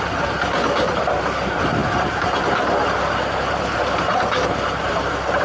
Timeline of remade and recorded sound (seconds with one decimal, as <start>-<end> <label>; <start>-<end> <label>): 0.0-5.4 recorded

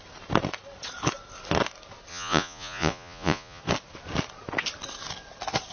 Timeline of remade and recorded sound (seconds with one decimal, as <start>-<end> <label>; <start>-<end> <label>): 0.0-2.1 recorded; 2.1-3.6 remade; 3.6-5.7 recorded

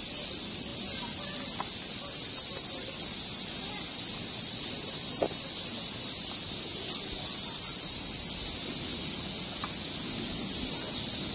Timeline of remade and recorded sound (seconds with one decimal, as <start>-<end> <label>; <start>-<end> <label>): 0.0-8.9 recorded; 8.9-10.0 remade; 10.0-11.3 recorded